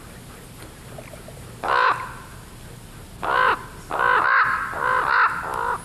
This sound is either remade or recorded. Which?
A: recorded